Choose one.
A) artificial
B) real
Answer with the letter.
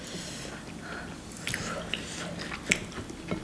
B